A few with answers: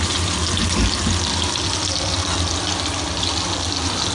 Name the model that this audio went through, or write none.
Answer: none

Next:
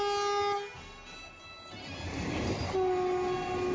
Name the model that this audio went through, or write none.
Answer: none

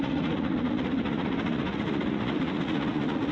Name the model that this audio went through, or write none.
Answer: vocoder, Vocos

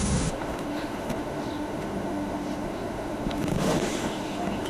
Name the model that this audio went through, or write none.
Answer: autoencoder, DAC-VAE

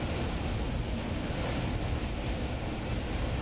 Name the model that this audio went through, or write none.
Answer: none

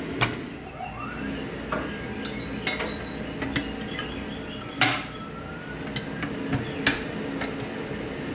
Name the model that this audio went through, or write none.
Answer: none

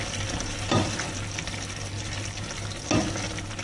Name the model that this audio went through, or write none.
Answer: none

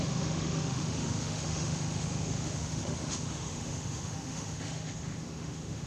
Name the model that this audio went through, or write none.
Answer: autoencoder, DAC-VAE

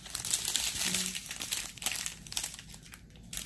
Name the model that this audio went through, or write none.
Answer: none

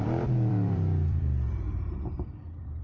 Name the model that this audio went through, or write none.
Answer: vocoder, BigVGAN v2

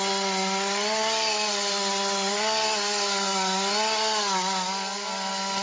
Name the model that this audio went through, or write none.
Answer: none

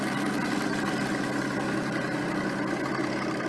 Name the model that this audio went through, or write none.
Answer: none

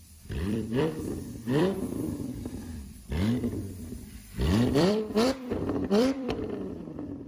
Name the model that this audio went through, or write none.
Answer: vocoder, BigVGAN v2